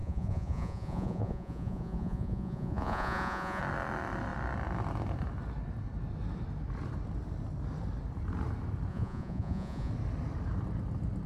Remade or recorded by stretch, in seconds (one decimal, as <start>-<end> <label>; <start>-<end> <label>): 0.0-3.6 remade; 3.6-8.9 recorded; 8.9-9.9 remade; 9.9-11.3 recorded